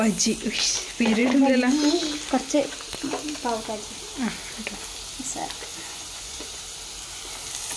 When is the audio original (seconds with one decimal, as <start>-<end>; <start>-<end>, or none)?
0.0-5.7; 6.6-7.8